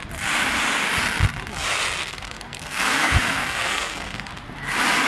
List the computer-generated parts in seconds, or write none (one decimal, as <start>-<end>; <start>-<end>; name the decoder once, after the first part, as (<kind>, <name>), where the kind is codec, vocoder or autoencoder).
2.0-4.3 (codec, SNAC)